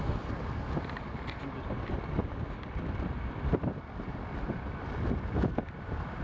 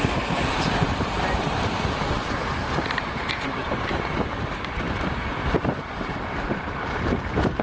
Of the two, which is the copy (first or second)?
second